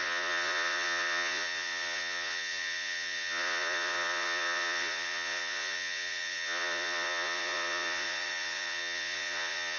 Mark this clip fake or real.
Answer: fake